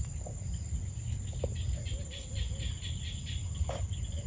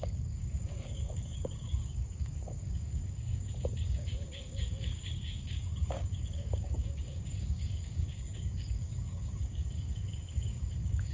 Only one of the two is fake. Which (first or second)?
second